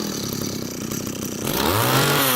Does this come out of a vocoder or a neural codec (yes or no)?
yes